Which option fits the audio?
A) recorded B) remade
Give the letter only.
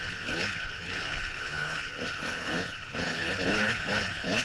B